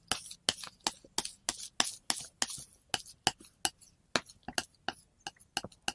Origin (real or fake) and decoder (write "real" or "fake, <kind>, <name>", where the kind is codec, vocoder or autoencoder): real